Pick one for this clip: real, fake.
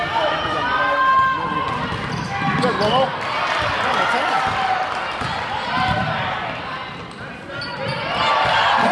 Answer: real